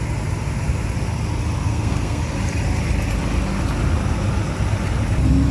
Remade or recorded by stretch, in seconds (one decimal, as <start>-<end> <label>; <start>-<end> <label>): 0.0-1.6 recorded; 1.6-2.2 remade; 2.2-5.5 recorded